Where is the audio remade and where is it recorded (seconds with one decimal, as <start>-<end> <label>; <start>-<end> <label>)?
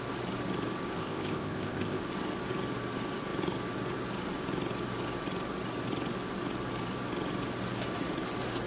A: 0.0-1.0 recorded; 1.0-2.0 remade; 2.0-8.7 recorded